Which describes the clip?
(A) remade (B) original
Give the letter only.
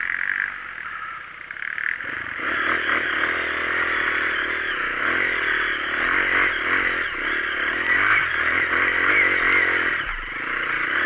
B